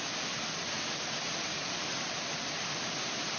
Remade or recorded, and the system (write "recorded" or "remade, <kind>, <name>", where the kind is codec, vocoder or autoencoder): recorded